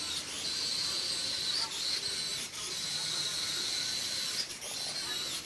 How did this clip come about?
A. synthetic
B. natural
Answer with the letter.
B